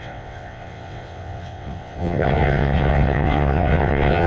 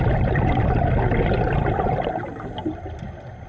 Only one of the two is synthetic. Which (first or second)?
first